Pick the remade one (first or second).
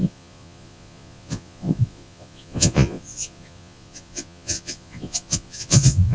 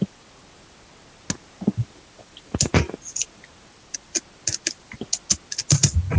first